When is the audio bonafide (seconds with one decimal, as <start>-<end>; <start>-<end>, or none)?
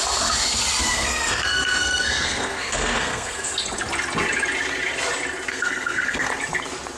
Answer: 0.0-0.9; 3.5-5.5; 6.3-7.0